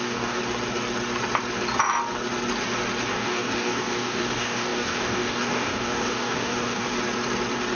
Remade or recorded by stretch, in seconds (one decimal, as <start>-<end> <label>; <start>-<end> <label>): 0.0-0.4 remade; 0.4-3.1 recorded; 3.1-6.9 remade; 6.9-7.8 recorded